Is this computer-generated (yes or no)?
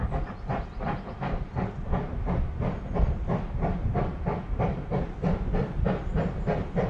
yes